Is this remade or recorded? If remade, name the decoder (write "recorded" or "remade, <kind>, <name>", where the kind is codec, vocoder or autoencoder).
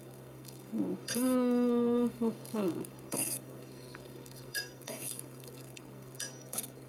remade, codec, SNAC